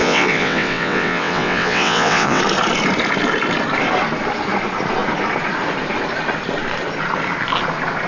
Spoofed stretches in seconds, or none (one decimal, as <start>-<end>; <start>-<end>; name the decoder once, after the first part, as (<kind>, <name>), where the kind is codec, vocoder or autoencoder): 0.0-2.4 (vocoder, WaveNeXt)